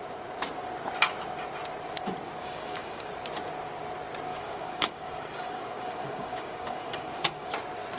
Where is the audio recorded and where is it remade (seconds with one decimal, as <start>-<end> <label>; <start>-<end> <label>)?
0.0-2.4 recorded; 2.4-3.1 remade; 3.1-4.3 recorded; 4.3-7.5 remade; 7.5-8.0 recorded